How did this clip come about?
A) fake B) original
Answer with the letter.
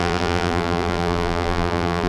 A